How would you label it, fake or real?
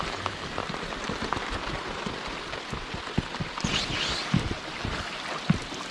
real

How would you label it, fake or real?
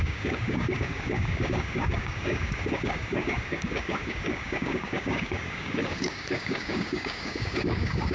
fake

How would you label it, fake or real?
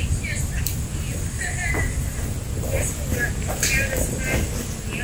real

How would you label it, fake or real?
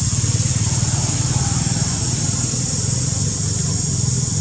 real